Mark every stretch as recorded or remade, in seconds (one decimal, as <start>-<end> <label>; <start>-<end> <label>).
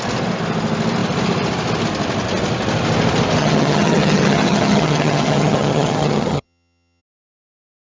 0.0-3.4 recorded; 3.4-7.0 remade; 7.0-7.8 recorded